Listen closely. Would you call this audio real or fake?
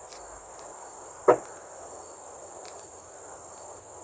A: real